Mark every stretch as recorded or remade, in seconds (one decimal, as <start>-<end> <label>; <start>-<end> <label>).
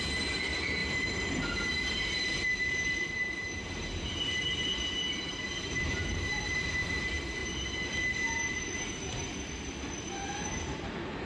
0.0-7.4 remade; 7.4-8.5 recorded; 8.5-11.3 remade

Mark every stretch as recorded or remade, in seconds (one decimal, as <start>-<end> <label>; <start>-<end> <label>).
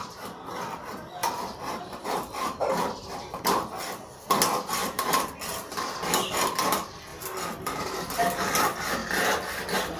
0.0-1.2 recorded; 1.2-3.7 remade; 3.7-4.8 recorded; 4.8-5.3 remade; 5.3-10.0 recorded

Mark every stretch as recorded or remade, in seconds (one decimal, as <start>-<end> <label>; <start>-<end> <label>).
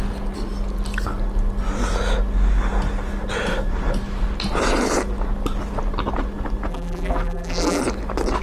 0.0-6.7 recorded; 6.7-7.8 remade; 7.8-8.4 recorded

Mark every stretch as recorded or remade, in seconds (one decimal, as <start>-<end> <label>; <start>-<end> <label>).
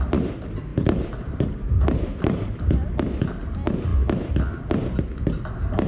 0.0-0.7 recorded; 0.7-2.5 remade; 2.5-5.9 recorded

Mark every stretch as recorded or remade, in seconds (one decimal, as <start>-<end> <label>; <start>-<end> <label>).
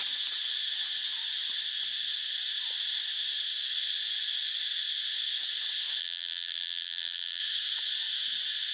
0.0-6.0 recorded; 6.0-7.4 remade; 7.4-8.7 recorded